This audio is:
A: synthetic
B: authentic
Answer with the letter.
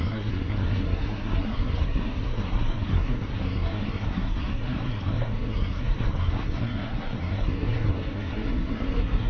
A